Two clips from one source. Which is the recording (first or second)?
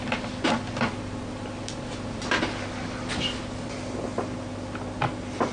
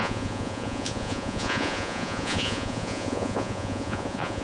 first